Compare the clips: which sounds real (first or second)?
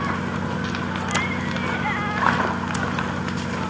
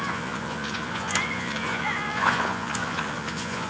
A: first